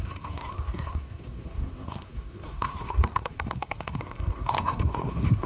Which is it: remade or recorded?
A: remade